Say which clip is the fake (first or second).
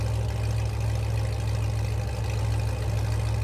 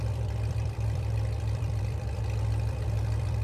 second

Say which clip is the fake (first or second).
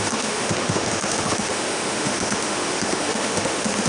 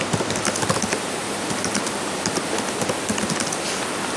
first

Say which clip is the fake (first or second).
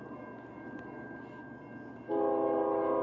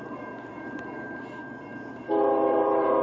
second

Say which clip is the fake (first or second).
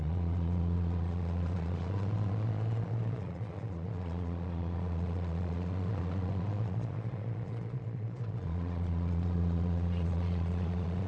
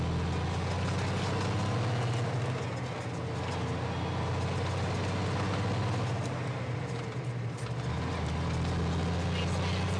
first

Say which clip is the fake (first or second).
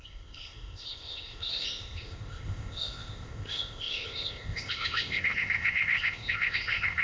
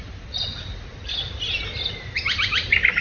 first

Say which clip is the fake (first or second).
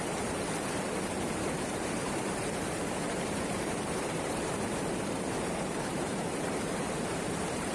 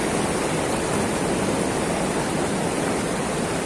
first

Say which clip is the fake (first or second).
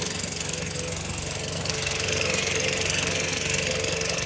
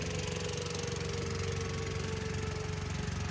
first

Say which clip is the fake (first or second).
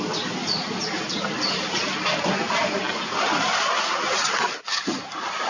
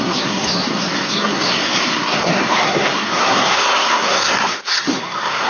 second